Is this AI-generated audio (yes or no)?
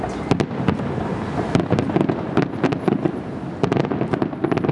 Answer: no